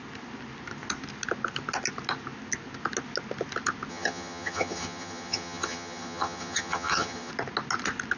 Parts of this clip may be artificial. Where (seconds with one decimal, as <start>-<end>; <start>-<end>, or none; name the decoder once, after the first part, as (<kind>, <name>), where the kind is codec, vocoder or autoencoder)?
3.9-7.3 (vocoder, HiFi-GAN)